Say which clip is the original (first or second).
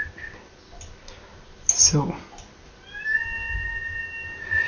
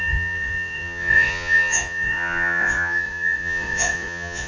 first